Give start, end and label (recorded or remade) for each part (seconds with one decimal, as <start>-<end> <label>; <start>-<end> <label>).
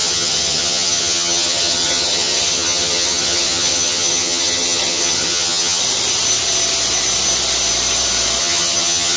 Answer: 0.0-5.8 remade; 5.8-8.4 recorded; 8.4-9.2 remade